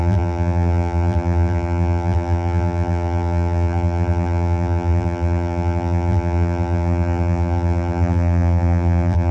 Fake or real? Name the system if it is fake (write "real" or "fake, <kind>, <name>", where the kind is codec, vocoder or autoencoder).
fake, vocoder, BigVGAN v2